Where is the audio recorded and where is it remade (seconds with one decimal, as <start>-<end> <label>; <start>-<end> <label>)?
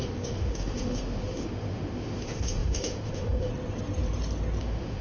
0.0-3.5 remade; 3.5-4.6 recorded; 4.6-5.0 remade